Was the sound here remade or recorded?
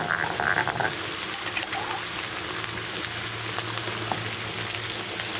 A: recorded